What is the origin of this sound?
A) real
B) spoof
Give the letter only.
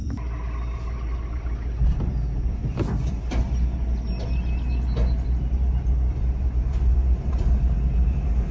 A